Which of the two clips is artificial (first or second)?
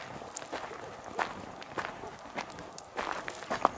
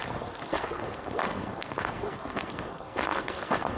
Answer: second